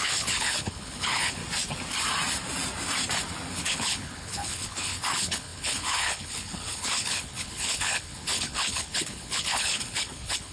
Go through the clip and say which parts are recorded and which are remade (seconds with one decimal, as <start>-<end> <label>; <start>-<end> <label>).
0.0-1.4 remade; 1.4-3.5 recorded; 3.5-10.5 remade